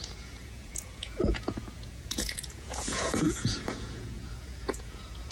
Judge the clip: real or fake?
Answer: fake